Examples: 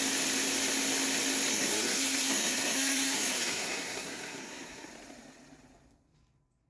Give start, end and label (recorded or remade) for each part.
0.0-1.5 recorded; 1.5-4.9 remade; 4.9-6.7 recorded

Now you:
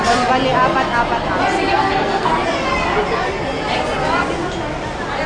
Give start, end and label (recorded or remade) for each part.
0.0-1.7 recorded; 1.7-2.3 remade; 2.3-5.3 recorded

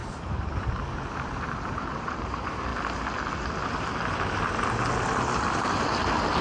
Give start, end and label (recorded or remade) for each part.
0.0-2.7 remade; 2.7-5.5 recorded; 5.5-6.4 remade